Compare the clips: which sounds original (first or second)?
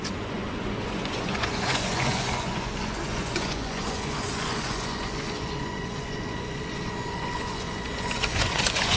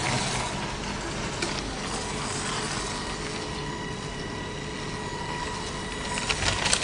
second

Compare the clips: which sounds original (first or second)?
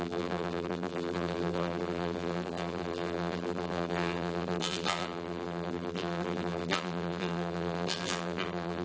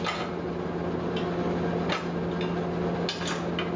second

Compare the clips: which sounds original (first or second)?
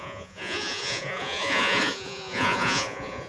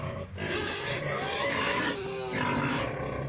second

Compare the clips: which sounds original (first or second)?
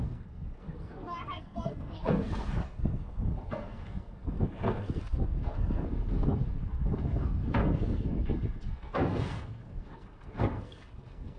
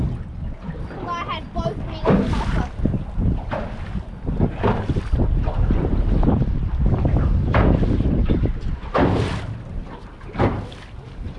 second